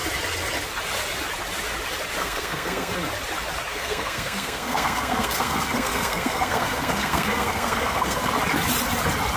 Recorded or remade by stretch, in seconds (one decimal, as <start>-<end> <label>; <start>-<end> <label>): 0.0-2.2 recorded; 2.2-2.9 remade; 2.9-3.7 recorded; 3.7-8.3 remade; 8.3-9.4 recorded